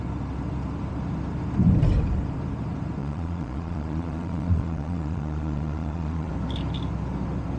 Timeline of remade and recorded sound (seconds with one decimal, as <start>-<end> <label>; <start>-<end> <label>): 0.0-3.0 recorded; 3.0-6.3 remade; 6.3-7.6 recorded